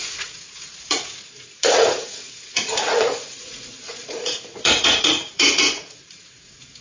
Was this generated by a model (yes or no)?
yes